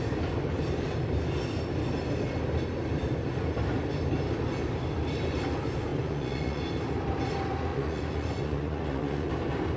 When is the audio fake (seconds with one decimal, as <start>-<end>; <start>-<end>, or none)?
5.9-6.6; 7.7-9.3

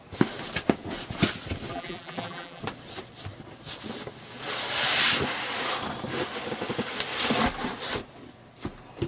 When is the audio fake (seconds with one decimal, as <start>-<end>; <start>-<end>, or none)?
1.7-2.6

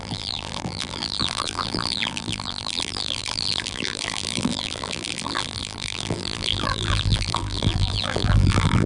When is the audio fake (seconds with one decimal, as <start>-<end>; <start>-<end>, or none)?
0.0-8.9

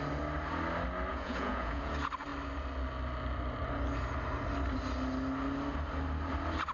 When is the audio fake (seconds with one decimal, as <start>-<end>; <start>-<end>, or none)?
1.1-1.9

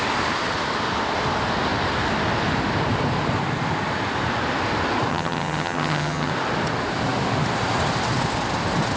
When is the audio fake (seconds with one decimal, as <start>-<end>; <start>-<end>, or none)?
5.1-6.3

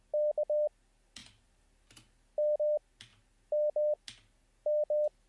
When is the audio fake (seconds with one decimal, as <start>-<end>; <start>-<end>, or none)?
none

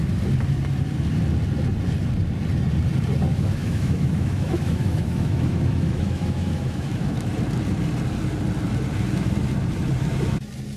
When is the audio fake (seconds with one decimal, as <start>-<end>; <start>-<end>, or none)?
3.3-7.3

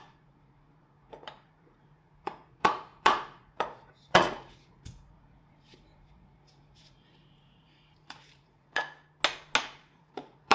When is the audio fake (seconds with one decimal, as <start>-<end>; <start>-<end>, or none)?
0.0-8.8; 9.6-10.5